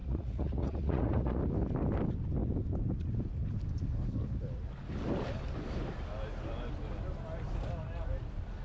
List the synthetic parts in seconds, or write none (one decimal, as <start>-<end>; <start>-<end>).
0.0-1.4